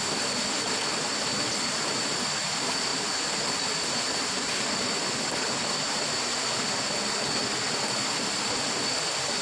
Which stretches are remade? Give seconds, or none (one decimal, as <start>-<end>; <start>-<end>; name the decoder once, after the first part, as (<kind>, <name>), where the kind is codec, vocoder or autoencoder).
none